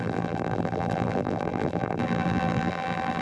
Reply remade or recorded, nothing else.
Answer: remade